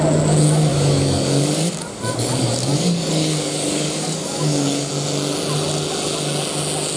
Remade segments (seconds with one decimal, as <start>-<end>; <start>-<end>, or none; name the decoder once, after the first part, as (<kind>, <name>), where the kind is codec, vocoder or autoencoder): 0.7-4.9 (codec, DAC)